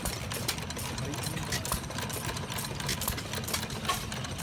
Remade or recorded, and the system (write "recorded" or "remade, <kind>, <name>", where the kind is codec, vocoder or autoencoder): recorded